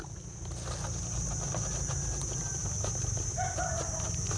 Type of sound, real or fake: real